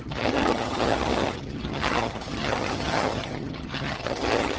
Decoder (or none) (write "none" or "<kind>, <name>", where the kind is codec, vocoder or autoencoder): vocoder, HiFi-GAN